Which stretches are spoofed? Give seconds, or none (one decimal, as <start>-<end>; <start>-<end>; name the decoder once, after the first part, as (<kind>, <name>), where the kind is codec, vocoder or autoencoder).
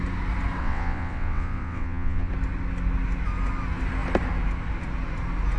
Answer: 0.6-2.3 (vocoder, WaveNeXt)